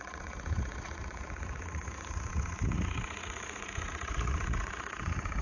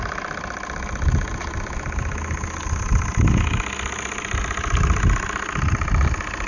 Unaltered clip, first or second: second